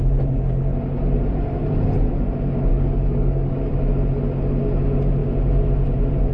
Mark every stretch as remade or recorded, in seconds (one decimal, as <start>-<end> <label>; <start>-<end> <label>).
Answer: 0.0-2.7 recorded; 2.7-3.7 remade; 3.7-6.3 recorded